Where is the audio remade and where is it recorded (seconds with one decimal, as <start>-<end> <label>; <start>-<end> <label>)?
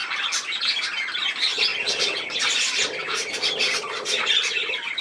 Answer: 0.0-1.7 recorded; 1.7-2.6 remade; 2.6-3.0 recorded; 3.0-5.0 remade